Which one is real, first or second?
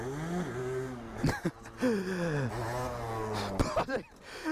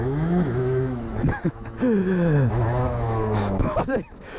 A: first